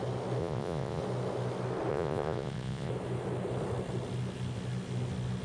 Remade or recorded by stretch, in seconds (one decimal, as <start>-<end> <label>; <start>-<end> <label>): 0.0-0.4 recorded; 0.4-1.0 remade; 1.0-1.9 recorded; 1.9-2.9 remade; 2.9-5.4 recorded